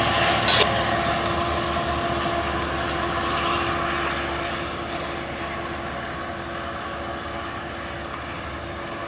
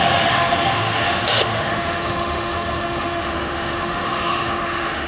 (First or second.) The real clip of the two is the first